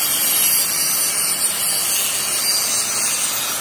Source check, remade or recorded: recorded